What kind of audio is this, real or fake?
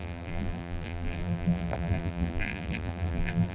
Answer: fake